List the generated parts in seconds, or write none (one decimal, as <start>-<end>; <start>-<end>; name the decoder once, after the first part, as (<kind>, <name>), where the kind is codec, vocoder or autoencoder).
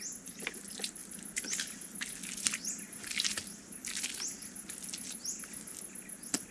none